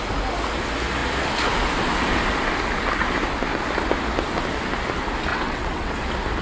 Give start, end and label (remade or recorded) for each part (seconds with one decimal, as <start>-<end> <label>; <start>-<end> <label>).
0.0-5.3 recorded; 5.3-5.9 remade; 5.9-6.4 recorded